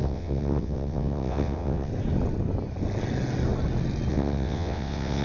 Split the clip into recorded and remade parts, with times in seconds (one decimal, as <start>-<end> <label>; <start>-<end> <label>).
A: 0.0-1.9 remade; 1.9-4.1 recorded; 4.1-5.2 remade